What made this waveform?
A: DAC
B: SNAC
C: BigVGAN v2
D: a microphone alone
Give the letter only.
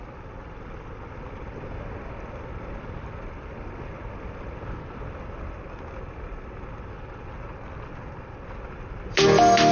D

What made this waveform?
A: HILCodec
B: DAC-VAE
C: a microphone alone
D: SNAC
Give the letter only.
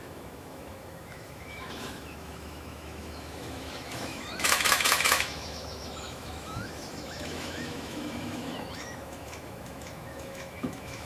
B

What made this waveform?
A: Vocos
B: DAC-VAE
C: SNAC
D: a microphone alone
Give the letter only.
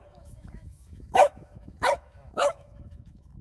B